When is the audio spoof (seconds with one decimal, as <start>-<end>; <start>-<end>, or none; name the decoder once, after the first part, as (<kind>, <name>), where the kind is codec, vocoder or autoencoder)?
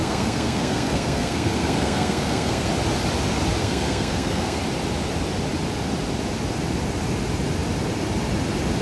0.0-2.7 (codec, SNAC); 3.6-4.6